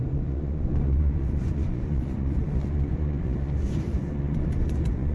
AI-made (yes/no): yes